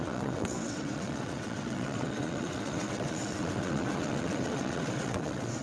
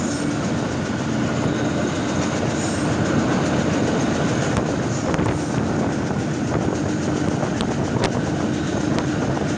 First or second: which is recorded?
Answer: second